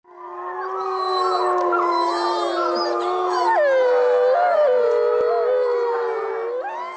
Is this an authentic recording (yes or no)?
yes